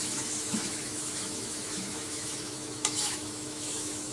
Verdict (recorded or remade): remade